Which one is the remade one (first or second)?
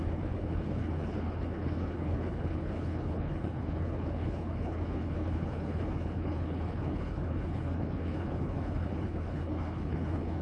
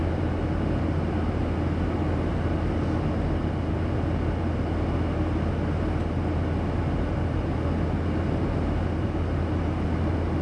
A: first